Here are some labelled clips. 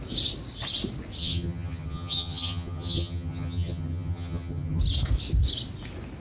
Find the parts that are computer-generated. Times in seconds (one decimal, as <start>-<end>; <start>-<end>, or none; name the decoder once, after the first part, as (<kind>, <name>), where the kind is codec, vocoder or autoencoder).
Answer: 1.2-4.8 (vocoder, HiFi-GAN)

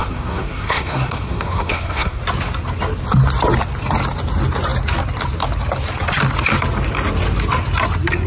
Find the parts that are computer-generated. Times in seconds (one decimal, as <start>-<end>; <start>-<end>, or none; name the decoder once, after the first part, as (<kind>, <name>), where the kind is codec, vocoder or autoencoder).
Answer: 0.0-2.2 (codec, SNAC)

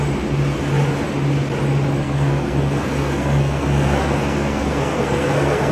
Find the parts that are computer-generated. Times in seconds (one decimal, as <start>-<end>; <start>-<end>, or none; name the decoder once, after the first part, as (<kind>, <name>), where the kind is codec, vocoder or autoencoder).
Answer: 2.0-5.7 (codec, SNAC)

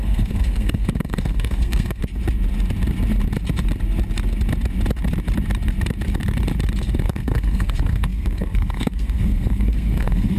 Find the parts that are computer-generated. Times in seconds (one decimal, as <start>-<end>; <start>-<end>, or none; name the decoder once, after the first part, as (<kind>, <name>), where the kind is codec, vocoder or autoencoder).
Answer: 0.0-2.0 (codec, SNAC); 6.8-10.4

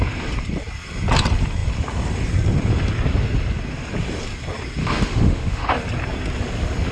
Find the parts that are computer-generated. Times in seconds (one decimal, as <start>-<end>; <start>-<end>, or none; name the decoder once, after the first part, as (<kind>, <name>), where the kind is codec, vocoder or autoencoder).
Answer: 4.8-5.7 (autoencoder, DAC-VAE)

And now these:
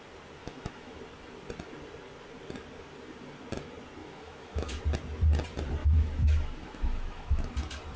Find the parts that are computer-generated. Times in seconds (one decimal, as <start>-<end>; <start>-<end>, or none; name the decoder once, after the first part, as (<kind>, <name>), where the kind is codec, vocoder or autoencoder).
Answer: 0.4-1.0 (autoencoder, DAC-VAE); 4.0-4.8; 5.8-7.5

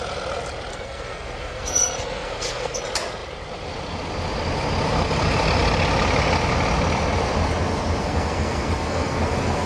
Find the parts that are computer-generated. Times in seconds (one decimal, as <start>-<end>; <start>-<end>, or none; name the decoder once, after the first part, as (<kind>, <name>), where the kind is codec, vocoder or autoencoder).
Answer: 0.7-2.8 (codec, SNAC); 8.0-9.7

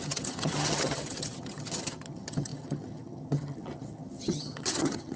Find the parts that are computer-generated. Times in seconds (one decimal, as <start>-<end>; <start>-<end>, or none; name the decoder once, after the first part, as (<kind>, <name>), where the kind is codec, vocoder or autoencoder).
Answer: 0.0-5.2 (vocoder, HiFi-GAN)